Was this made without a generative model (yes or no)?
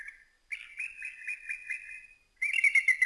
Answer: yes